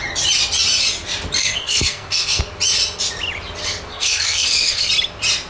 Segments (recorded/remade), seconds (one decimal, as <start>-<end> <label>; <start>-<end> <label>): 0.0-1.4 recorded; 1.4-2.4 remade; 2.4-3.9 recorded; 3.9-4.9 remade; 4.9-5.5 recorded